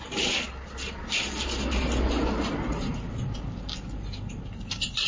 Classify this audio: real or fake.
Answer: real